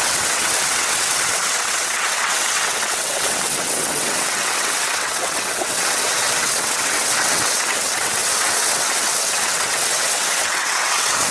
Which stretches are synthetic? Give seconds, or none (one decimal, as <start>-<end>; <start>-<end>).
0.0-11.3